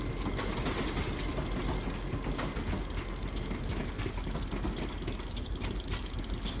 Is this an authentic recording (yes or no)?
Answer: yes